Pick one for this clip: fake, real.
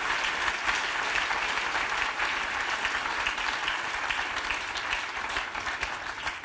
real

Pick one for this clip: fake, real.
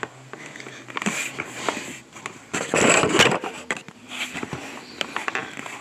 real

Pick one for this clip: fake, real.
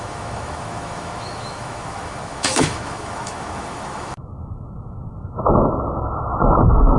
fake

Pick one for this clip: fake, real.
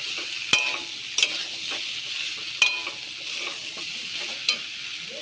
real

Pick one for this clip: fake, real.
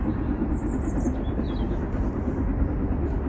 real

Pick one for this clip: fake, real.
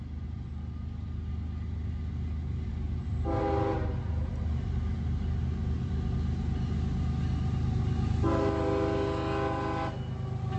real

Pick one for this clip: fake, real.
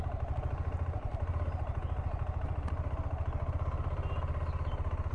real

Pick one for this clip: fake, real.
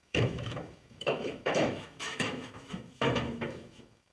fake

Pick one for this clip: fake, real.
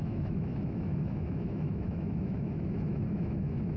fake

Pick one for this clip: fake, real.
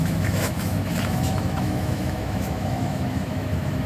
fake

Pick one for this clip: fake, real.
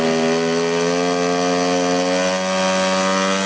real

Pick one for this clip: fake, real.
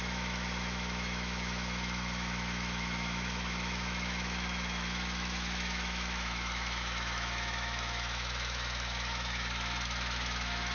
fake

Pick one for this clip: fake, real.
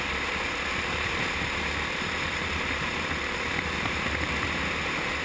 real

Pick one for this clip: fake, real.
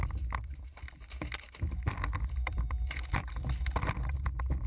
real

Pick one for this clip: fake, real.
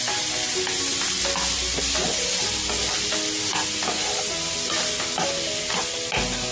real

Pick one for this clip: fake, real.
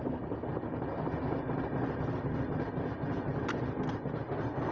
real